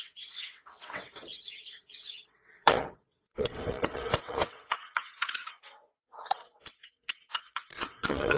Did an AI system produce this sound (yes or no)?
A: yes